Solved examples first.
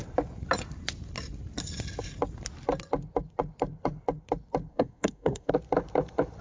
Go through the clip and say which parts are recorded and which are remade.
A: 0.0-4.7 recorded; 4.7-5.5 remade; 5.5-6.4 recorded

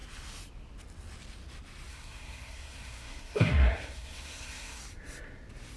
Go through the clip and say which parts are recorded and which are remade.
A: 0.0-1.9 recorded; 1.9-4.8 remade; 4.8-5.8 recorded

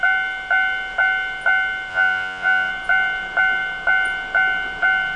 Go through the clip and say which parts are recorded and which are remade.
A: 0.0-1.9 recorded; 1.9-2.7 remade; 2.7-5.2 recorded

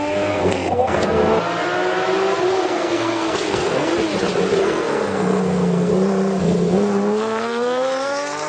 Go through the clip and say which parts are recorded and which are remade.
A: 0.0-1.2 remade; 1.2-2.5 recorded; 2.5-3.9 remade; 3.9-4.6 recorded; 4.6-5.9 remade; 5.9-6.4 recorded; 6.4-8.5 remade

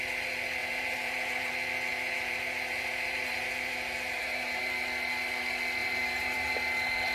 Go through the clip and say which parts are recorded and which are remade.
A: 0.0-0.6 recorded; 0.6-1.5 remade; 1.5-1.9 recorded; 1.9-4.6 remade; 4.6-5.8 recorded; 5.8-6.5 remade; 6.5-7.1 recorded